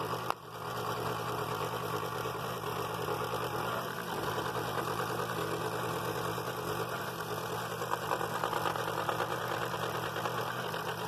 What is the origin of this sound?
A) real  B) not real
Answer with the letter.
A